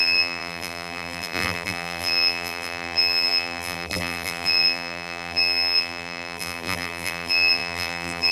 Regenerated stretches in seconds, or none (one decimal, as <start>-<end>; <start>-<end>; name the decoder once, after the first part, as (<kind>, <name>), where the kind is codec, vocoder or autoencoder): 0.0-8.3 (vocoder, BigVGAN v2)